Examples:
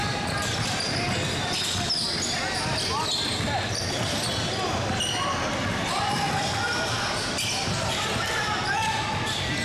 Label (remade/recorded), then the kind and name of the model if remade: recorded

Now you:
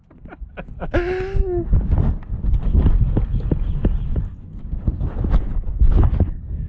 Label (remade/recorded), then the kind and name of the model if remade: recorded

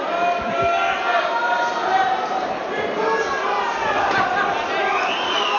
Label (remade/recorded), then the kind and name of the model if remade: recorded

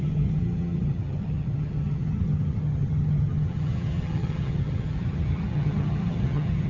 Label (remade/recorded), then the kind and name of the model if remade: remade, vocoder, HiFi-GAN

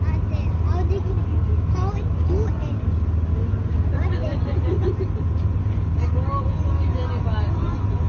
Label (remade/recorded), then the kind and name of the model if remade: recorded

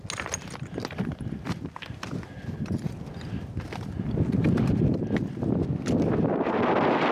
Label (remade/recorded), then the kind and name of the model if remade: recorded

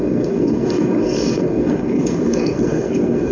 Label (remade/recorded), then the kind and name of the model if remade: remade, codec, SNAC